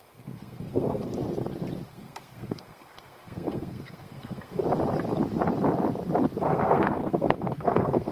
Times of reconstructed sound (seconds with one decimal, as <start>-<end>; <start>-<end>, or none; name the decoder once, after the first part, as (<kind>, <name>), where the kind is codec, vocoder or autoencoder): 0.0-1.1 (codec, SNAC); 1.9-4.6; 6.4-8.1